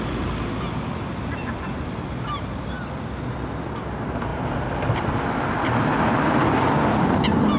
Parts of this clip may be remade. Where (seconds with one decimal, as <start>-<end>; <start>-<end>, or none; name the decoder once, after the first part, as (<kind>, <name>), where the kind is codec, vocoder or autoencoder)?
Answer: none